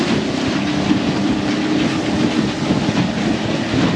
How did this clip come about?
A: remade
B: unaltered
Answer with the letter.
A